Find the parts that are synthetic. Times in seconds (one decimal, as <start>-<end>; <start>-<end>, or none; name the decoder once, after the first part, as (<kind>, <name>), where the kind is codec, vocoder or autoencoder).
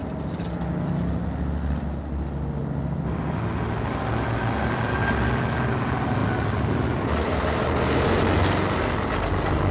none